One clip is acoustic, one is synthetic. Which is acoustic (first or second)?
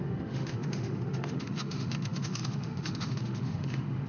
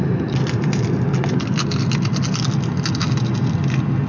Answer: second